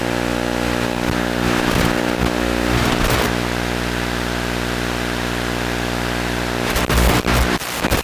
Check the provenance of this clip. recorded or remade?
recorded